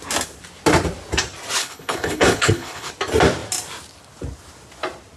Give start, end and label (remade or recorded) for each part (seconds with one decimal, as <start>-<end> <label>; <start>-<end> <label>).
0.0-1.6 recorded; 1.6-2.9 remade; 2.9-5.2 recorded